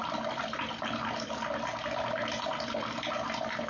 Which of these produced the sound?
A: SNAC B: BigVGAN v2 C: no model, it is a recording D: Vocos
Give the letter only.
C